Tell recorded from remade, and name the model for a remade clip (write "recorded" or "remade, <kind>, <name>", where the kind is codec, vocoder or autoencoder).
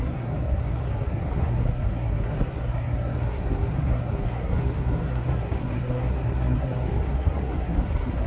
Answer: remade, codec, SNAC